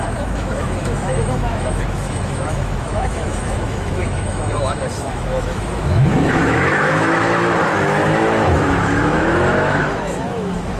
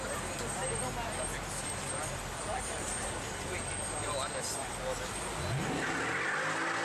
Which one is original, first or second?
second